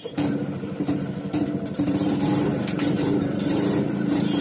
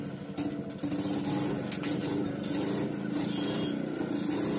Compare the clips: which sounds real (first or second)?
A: second